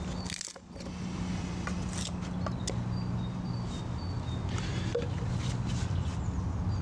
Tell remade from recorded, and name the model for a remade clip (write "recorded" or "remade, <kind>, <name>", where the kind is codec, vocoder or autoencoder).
recorded